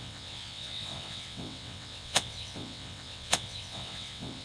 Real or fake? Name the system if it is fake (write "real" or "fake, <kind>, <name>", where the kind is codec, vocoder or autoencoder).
fake, vocoder, WaveNeXt